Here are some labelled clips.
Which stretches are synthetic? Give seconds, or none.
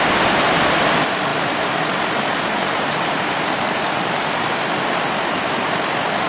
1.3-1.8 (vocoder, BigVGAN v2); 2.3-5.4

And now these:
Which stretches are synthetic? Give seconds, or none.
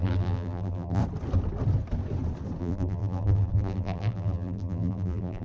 0.0-1.0 (vocoder, BigVGAN v2); 2.6-5.4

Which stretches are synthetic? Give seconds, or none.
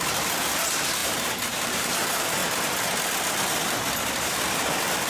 0.0-2.4 (vocoder, BigVGAN v2); 4.2-5.1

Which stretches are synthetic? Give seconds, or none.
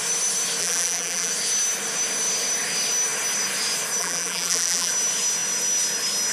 0.6-1.3 (vocoder, BigVGAN v2); 4.0-4.9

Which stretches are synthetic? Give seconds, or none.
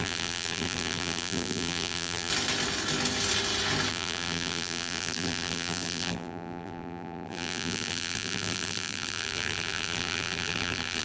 0.0-2.3 (vocoder, BigVGAN v2); 3.9-11.0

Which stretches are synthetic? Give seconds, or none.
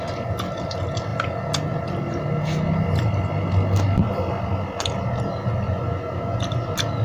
none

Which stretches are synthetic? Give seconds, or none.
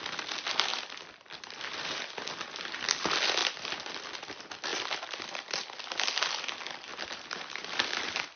0.7-2.1 (vocoder, BigVGAN v2); 3.4-4.3; 4.7-5.6; 6.9-7.4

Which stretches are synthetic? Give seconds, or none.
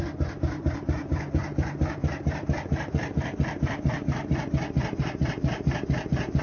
0.0-6.4 (vocoder, BigVGAN v2)